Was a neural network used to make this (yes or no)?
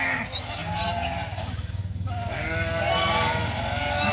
yes